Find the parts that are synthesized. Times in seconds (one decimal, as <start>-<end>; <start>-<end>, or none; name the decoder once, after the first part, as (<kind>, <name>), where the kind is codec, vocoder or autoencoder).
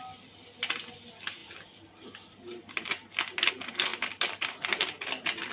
none